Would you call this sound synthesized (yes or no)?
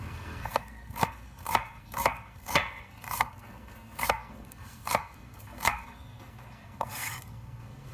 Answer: yes